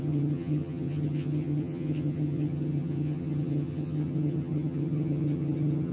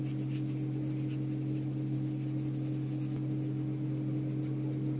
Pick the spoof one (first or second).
first